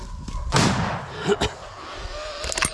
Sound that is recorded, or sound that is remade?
recorded